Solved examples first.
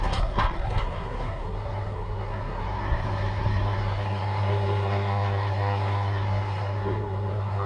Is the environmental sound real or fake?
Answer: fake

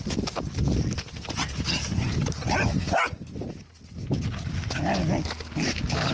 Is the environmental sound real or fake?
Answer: real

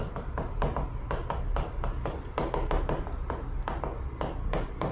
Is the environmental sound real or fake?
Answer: real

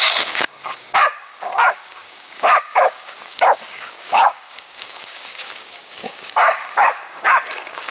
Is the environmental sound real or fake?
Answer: fake